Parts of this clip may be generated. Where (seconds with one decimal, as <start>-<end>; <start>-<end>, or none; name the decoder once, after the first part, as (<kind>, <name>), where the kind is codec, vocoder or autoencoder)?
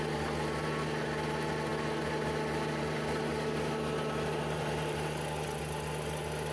none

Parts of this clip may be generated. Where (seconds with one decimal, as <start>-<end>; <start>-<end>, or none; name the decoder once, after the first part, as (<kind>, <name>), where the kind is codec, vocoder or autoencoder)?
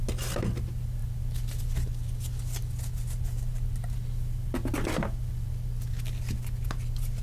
none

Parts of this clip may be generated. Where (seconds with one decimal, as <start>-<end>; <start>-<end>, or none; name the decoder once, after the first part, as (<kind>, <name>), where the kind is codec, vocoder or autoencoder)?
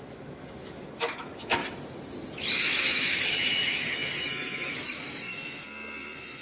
0.0-1.6 (autoencoder, DAC-VAE); 2.6-6.4